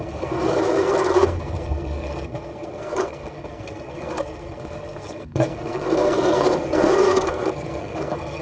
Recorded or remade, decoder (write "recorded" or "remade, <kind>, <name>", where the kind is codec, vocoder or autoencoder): remade, codec, SNAC